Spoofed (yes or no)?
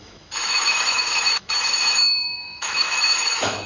yes